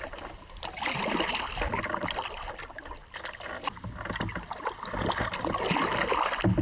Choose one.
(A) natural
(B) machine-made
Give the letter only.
A